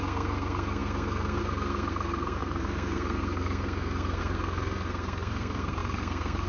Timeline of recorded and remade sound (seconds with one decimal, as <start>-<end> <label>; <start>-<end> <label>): 0.0-6.5 remade

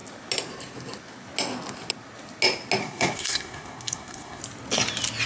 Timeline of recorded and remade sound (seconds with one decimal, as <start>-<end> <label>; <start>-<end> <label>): 0.0-2.8 recorded; 2.8-4.4 remade; 4.4-5.3 recorded

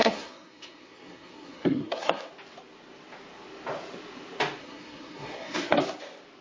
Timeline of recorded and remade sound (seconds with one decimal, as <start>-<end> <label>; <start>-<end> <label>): 0.0-2.3 remade; 2.3-4.6 recorded; 4.6-5.8 remade; 5.8-6.4 recorded

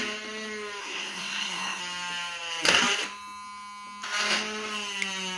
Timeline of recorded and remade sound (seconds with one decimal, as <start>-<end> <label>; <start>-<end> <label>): 0.0-0.8 recorded; 0.8-1.8 remade; 1.8-5.4 recorded

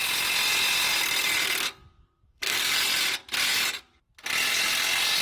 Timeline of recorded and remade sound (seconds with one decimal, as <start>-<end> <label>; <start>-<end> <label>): 0.0-2.0 recorded; 2.0-2.6 remade; 2.6-5.2 recorded

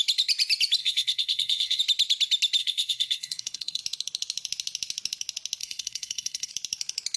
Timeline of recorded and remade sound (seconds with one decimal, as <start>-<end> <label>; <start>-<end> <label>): 0.0-0.8 recorded; 0.8-1.8 remade; 1.8-2.6 recorded; 2.6-3.8 remade; 3.8-5.6 recorded; 5.6-6.5 remade; 6.5-7.2 recorded

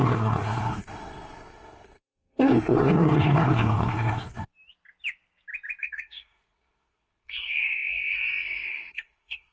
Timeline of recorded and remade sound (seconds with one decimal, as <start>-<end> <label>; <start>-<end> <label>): 0.0-4.5 remade; 4.5-5.8 recorded; 5.8-9.5 remade